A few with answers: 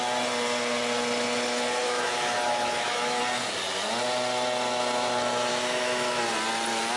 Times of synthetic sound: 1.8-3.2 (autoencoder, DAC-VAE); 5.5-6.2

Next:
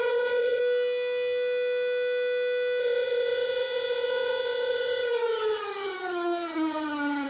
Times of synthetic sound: 0.0-0.6 (vocoder, HiFi-GAN); 2.8-7.3

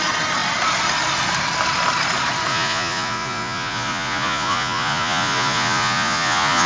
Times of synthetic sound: 2.5-6.7 (vocoder, Vocos)

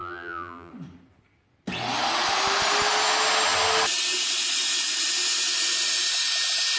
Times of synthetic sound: 0.0-0.7 (vocoder, BigVGAN v2)

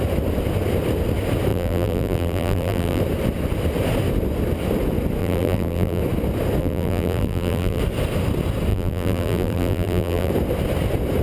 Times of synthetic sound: 1.5-3.0 (vocoder, BigVGAN v2); 5.2-6.0; 6.6-7.8; 8.7-10.3

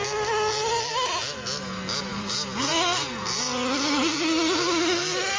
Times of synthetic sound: 2.1-2.7 (vocoder, BigVGAN v2)

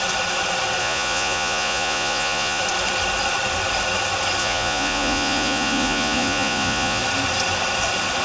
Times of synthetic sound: 0.8-2.6 (vocoder, Vocos); 4.4-7.0